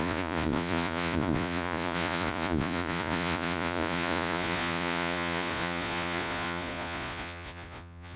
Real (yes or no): no